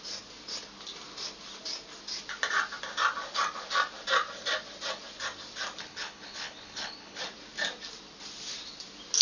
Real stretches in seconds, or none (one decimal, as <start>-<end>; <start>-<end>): 0.0-5.8; 7.2-9.2